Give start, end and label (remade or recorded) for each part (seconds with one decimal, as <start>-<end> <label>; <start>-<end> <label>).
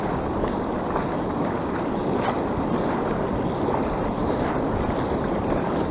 0.0-5.9 recorded